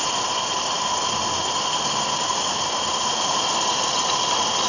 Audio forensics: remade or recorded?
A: recorded